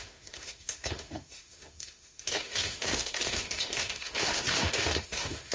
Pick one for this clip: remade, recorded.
remade